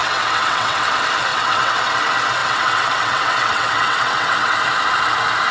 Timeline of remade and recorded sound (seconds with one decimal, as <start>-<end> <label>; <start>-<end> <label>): 0.0-0.9 remade; 0.9-1.3 recorded; 1.3-1.9 remade; 1.9-2.4 recorded; 2.4-4.6 remade; 4.6-5.5 recorded